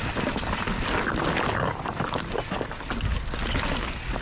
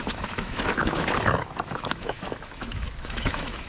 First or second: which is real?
first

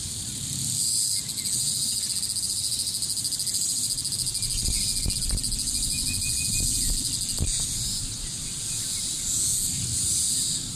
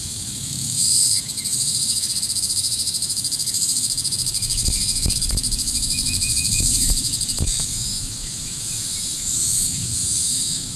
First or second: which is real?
first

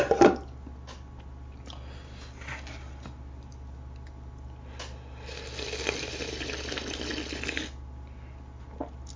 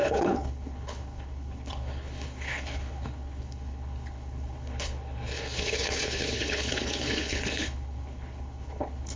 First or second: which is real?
first